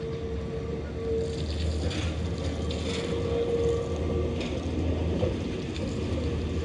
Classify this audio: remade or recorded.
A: recorded